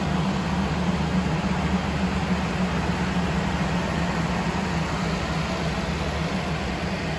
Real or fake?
real